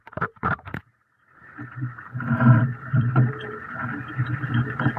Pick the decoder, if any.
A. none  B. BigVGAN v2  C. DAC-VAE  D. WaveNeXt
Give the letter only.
B